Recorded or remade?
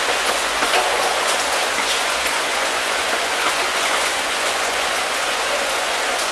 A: remade